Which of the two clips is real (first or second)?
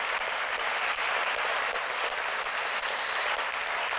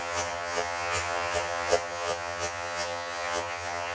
first